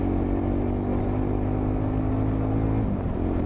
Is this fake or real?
real